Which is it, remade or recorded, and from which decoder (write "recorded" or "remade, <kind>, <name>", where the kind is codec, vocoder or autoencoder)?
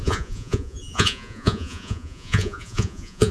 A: remade, vocoder, Vocos